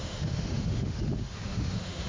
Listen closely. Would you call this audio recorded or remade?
remade